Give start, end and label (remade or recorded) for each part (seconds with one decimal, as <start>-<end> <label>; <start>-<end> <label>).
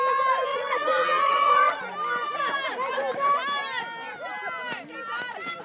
0.0-0.5 recorded; 0.5-1.8 remade; 1.8-5.6 recorded